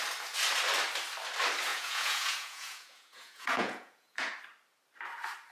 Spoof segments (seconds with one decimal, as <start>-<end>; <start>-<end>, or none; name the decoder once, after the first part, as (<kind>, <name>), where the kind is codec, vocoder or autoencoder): 1.7-4.3 (vocoder, Vocos)